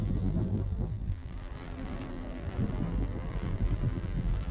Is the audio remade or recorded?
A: remade